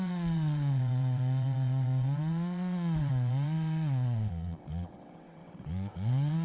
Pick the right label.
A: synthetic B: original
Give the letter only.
A